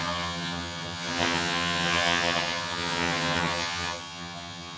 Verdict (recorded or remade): remade